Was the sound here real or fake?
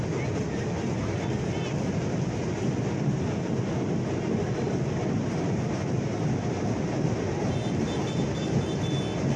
real